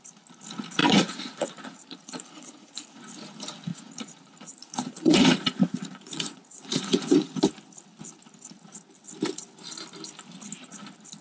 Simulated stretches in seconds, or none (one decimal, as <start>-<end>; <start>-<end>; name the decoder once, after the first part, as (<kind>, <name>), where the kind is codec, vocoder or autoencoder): 0.8-3.0 (vocoder, Vocos); 3.7-7.4